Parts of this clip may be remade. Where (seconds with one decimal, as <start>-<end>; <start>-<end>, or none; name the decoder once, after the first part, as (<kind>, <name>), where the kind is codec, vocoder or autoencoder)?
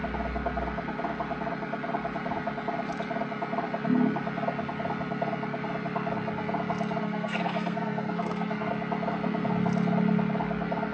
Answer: 7.0-8.7 (codec, SNAC)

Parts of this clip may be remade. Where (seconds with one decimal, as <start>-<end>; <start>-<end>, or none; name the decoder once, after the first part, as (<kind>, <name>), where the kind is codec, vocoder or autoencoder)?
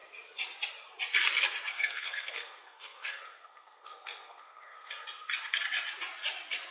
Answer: 1.7-4.9 (codec, SNAC)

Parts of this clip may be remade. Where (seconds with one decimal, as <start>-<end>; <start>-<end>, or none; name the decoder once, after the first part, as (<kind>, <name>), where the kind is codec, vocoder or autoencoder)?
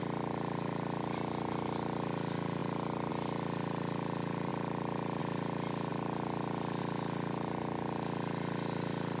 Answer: none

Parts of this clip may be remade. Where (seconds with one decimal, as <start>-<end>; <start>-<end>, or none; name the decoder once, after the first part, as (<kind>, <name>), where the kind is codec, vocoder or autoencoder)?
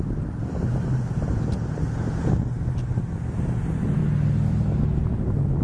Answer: none